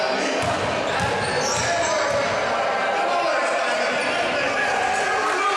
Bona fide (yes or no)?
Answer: yes